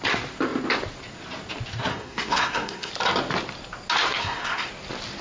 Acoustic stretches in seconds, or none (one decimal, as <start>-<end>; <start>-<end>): 0.0-1.9; 2.9-4.2; 4.7-5.2